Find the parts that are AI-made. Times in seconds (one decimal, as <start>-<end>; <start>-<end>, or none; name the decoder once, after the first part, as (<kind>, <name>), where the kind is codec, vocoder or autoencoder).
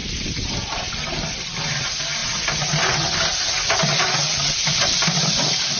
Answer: none